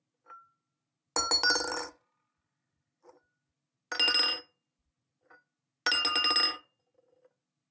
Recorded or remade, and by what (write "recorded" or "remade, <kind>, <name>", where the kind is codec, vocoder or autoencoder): recorded